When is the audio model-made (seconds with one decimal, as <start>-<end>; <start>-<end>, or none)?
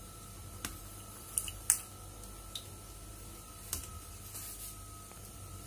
none